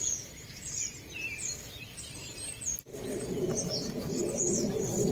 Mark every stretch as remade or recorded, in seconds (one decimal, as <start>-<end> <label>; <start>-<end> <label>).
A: 0.0-5.1 recorded